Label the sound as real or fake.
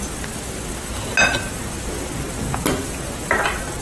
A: real